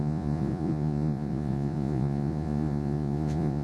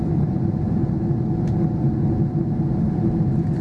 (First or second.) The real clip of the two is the second